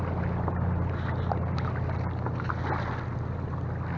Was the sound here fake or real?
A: real